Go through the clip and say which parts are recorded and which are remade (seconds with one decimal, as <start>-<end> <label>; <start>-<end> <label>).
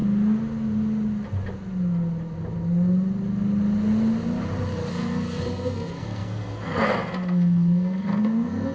0.0-4.9 recorded; 4.9-8.7 remade